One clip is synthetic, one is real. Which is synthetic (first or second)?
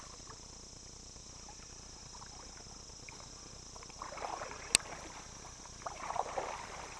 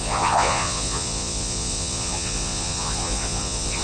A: second